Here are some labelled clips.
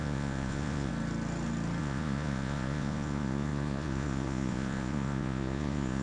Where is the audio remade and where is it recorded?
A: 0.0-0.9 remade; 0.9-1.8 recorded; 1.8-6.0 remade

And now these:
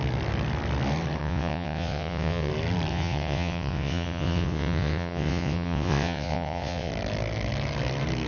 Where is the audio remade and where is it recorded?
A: 0.0-1.2 recorded; 1.2-2.5 remade; 2.5-2.9 recorded; 2.9-6.9 remade; 6.9-8.3 recorded